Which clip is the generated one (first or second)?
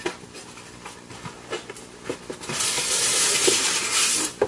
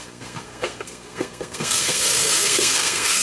second